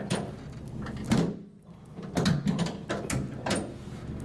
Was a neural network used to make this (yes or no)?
no